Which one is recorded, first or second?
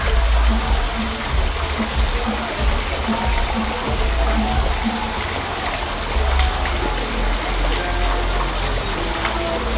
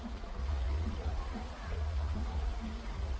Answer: first